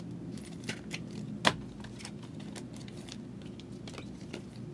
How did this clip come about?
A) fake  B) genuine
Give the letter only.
B